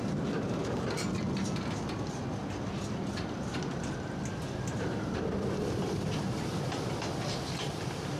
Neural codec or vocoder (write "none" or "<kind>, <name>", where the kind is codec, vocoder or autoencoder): none